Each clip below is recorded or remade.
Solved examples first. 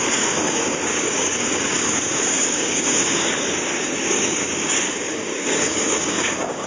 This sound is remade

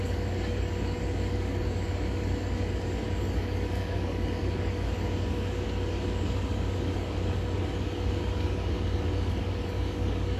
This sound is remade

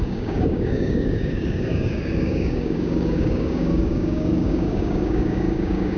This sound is remade